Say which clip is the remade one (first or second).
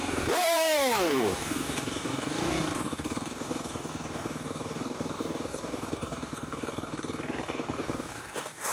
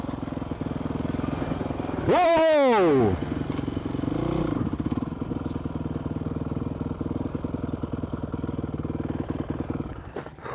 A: first